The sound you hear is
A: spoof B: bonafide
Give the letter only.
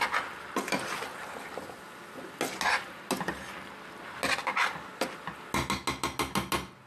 B